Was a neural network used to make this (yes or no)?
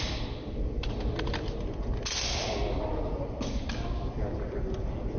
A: no